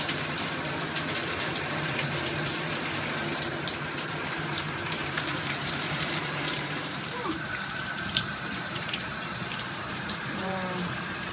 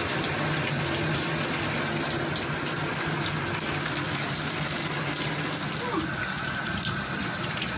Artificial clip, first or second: first